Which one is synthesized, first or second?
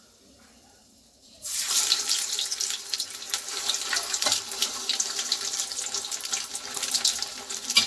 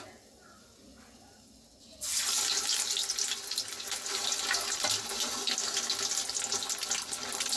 first